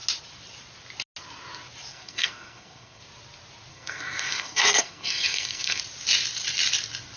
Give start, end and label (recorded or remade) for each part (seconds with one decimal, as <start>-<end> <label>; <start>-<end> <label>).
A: 0.0-1.9 recorded; 1.9-3.0 remade; 3.0-3.7 recorded; 3.7-5.8 remade; 5.8-7.2 recorded